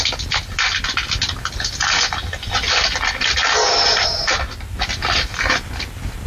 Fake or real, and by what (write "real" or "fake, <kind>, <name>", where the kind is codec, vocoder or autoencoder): real